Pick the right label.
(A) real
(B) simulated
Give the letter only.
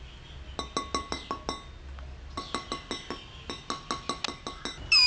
A